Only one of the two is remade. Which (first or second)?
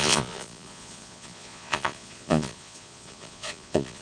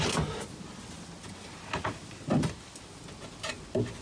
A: first